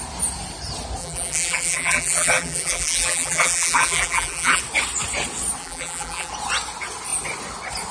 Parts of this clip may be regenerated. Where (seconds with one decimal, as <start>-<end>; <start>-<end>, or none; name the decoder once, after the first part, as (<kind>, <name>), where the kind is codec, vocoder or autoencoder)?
1.0-4.6 (vocoder, BigVGAN v2); 5.6-6.3